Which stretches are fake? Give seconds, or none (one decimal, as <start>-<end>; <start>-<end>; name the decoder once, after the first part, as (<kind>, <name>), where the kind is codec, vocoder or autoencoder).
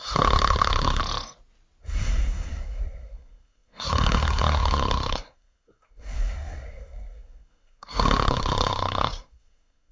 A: 0.0-1.0 (codec, SNAC); 1.8-9.9